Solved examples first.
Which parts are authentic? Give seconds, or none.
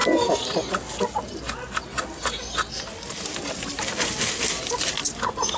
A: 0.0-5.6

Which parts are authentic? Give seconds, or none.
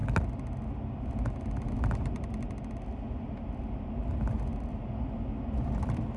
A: 0.0-6.2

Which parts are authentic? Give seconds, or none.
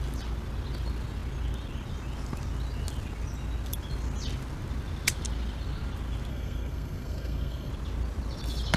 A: 0.0-6.3; 7.7-8.8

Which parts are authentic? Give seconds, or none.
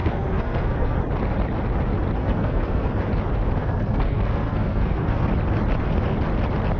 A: 1.0-2.2; 2.9-3.6; 5.3-6.8